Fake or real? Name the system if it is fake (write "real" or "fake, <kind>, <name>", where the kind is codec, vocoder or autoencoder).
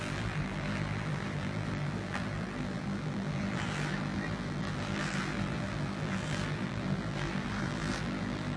fake, vocoder, BigVGAN v2